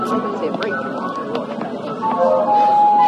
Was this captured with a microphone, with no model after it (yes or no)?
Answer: yes